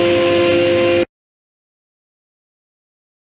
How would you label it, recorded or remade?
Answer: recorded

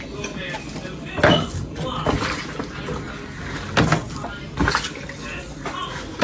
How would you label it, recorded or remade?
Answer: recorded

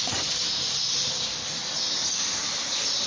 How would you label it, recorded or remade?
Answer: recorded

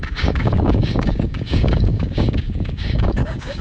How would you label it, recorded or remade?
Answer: remade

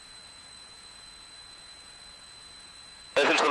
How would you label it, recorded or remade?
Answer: remade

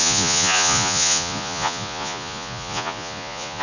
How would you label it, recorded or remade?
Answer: remade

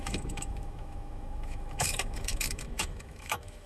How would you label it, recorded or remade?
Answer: remade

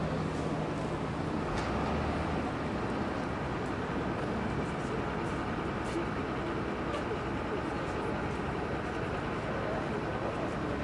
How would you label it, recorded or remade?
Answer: recorded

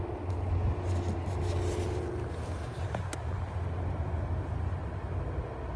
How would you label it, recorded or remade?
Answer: recorded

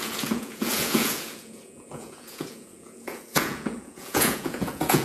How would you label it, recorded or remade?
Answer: remade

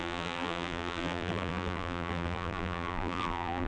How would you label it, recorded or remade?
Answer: remade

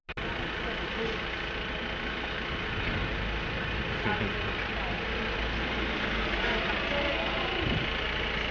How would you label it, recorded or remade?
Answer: recorded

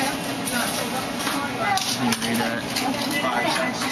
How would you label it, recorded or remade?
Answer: recorded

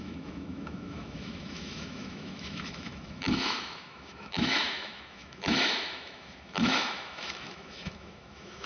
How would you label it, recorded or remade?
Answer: remade